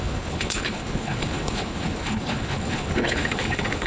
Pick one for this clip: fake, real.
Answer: fake